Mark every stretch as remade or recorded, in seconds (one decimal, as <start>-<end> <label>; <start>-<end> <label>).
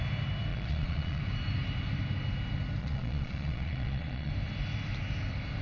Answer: 0.0-0.5 recorded; 0.5-1.2 remade; 1.2-2.8 recorded; 2.8-4.3 remade; 4.3-5.6 recorded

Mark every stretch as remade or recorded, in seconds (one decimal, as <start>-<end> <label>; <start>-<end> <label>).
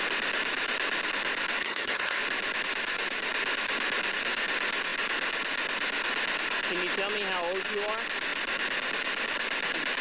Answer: 0.0-1.6 recorded; 1.6-2.2 remade; 2.2-10.0 recorded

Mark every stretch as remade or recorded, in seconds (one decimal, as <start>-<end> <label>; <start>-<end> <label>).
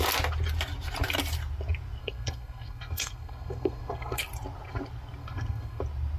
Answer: 0.0-2.0 recorded; 2.0-4.2 remade; 4.2-5.2 recorded; 5.2-5.8 remade; 5.8-6.2 recorded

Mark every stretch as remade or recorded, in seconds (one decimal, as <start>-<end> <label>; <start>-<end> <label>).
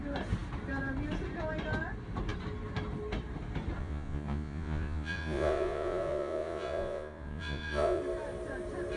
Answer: 0.0-3.8 recorded; 3.8-8.0 remade; 8.0-9.0 recorded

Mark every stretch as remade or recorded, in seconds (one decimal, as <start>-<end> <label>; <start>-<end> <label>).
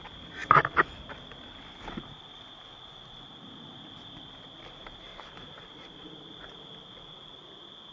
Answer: 0.0-5.1 recorded; 5.1-6.3 remade; 6.3-7.9 recorded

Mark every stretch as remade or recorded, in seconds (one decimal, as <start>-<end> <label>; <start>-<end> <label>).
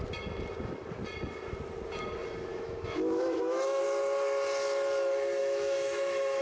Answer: 0.0-2.5 recorded; 2.5-3.8 remade; 3.8-5.4 recorded; 5.4-6.4 remade